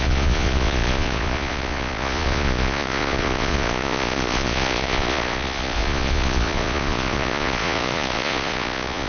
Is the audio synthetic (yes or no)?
yes